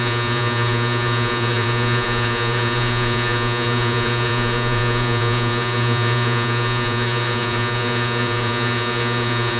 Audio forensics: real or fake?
fake